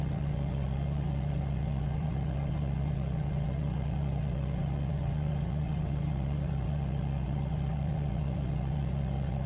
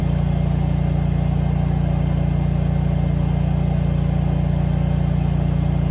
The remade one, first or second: first